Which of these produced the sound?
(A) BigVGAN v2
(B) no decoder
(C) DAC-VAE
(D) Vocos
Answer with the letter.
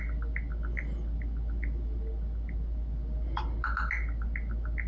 B